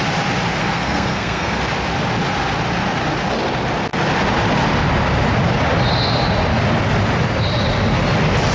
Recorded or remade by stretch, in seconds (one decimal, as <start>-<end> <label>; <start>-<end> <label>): 0.0-0.6 recorded; 0.6-1.6 remade; 1.6-8.5 recorded